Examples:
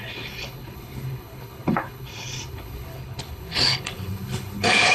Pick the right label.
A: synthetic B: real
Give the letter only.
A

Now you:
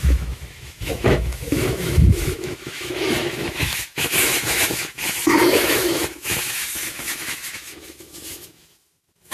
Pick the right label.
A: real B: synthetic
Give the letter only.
B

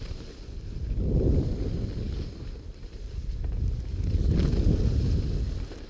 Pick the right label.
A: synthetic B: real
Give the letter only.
B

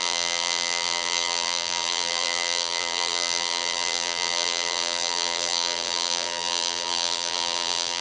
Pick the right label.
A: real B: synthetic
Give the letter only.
B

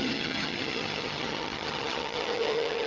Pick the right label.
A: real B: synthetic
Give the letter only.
B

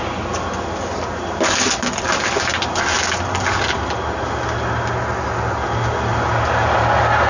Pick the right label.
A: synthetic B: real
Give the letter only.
B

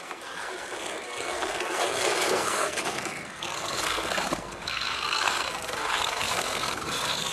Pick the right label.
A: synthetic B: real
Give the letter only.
A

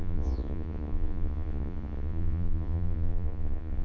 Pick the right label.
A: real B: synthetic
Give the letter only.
B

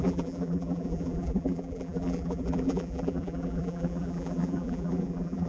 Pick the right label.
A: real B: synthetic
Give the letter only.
B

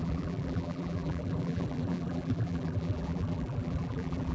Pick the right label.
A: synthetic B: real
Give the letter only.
A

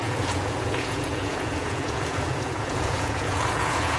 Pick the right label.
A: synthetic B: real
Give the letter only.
A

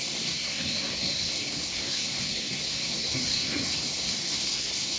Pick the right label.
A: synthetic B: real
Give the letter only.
A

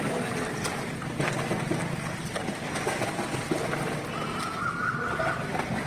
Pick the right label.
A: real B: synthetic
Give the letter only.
A